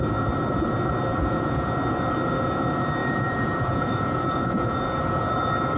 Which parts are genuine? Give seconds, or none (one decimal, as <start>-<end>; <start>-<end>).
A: 0.0-1.1; 1.7-3.0; 5.0-5.8